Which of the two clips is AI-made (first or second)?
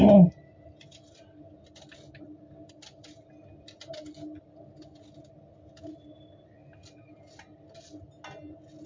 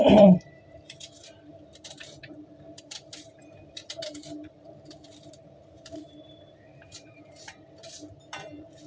second